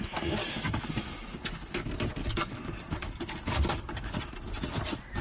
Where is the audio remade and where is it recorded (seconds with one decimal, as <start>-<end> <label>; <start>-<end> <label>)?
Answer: 0.0-0.4 recorded; 0.4-0.9 remade; 0.9-2.2 recorded; 2.2-4.2 remade; 4.2-5.2 recorded